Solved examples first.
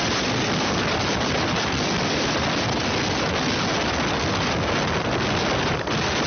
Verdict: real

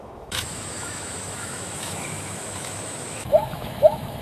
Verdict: fake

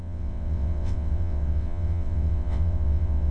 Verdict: fake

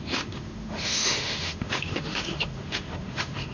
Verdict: fake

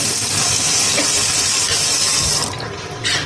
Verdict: real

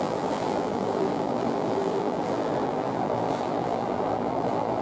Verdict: fake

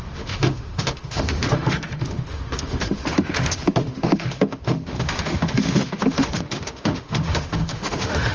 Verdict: fake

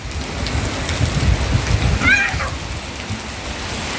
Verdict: real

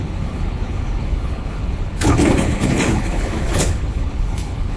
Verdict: fake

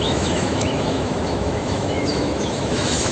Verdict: fake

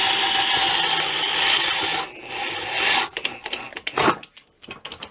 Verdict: real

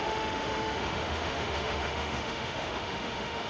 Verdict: fake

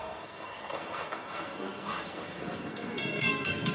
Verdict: fake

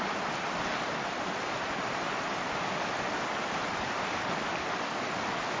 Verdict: real